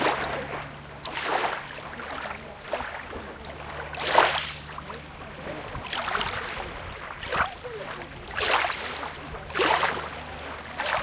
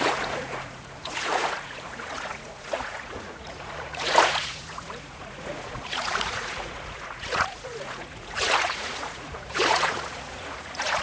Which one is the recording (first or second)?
first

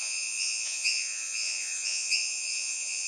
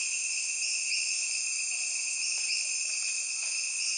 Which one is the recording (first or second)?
second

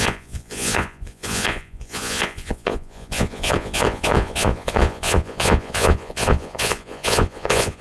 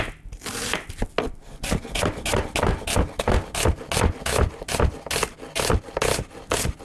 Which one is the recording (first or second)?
second